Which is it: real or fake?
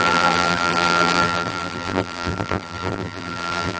fake